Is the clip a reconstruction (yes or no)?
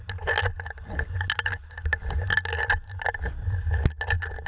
no